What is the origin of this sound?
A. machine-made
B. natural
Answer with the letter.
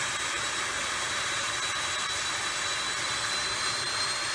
B